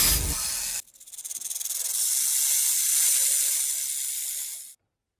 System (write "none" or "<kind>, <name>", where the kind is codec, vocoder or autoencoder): none